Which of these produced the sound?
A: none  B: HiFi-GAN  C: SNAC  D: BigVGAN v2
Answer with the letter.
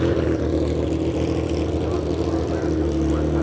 A